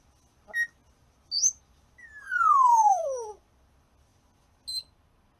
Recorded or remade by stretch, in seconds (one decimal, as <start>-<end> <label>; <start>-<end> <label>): 0.0-2.7 recorded; 2.7-3.3 remade; 3.3-5.4 recorded